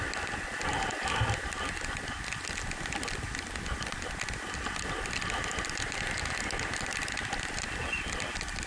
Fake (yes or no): no